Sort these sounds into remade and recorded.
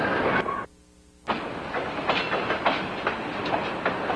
recorded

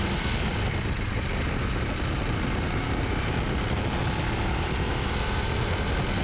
recorded